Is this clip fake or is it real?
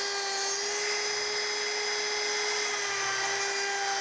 real